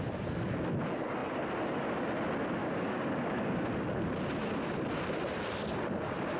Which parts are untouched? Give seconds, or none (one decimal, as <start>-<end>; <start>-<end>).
0.0-2.6; 3.6-6.4